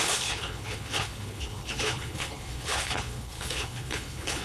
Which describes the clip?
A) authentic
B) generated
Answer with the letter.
B